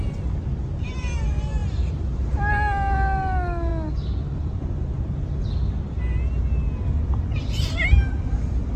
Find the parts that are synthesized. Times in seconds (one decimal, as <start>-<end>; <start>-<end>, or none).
none